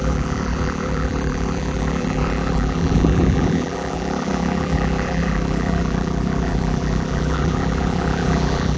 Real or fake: fake